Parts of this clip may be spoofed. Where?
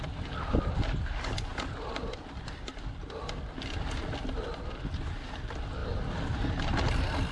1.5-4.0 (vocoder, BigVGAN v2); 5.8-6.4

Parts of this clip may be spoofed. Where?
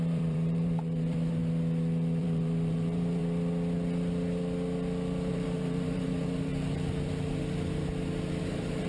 0.0-1.4 (vocoder, BigVGAN v2); 2.2-3.2; 5.3-6.5; 8.4-8.9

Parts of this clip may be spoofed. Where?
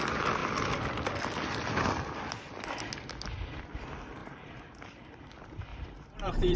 4.2-5.3 (vocoder, BigVGAN v2); 5.7-6.6